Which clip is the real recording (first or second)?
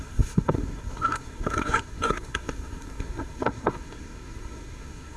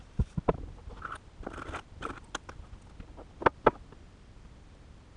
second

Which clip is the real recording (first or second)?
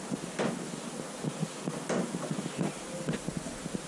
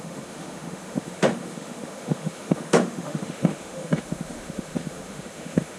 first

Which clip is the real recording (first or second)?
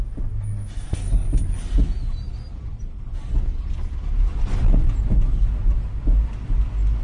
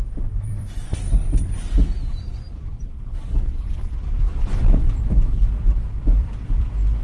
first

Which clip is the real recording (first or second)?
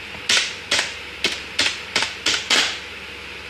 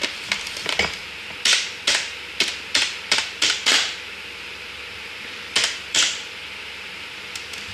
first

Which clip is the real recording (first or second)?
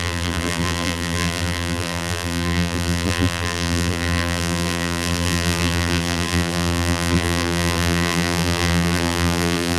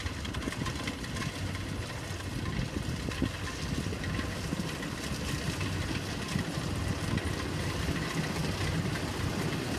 second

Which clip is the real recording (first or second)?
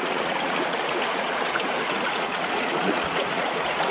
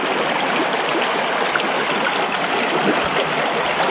second